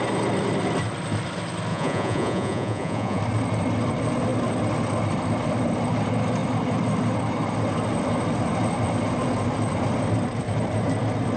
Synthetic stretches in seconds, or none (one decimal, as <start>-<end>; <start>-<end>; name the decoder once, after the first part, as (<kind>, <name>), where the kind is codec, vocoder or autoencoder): 1.7-3.2 (vocoder, Vocos)